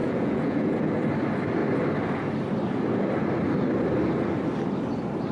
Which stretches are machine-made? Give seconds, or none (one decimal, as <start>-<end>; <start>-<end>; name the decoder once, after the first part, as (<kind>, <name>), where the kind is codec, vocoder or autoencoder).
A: 0.0-0.9 (vocoder, Vocos)